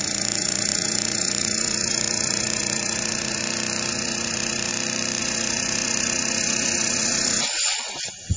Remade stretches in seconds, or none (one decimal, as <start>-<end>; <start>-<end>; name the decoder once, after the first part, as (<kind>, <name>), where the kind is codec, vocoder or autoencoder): 0.0-3.4 (vocoder, Vocos); 3.9-4.7; 5.2-8.4